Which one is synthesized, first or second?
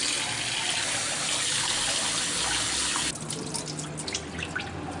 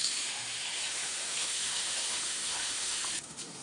second